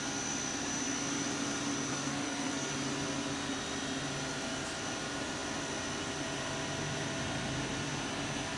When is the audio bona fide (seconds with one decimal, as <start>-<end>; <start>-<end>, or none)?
0.0-1.9; 2.7-8.6